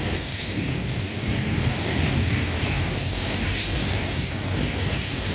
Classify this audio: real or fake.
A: fake